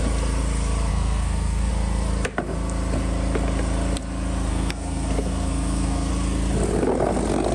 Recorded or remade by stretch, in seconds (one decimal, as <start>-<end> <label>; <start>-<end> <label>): 0.0-0.9 recorded; 0.9-1.7 remade; 1.7-4.5 recorded; 4.5-6.1 remade; 6.1-7.5 recorded